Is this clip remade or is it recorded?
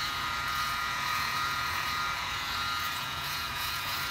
remade